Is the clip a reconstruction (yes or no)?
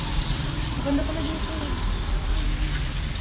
yes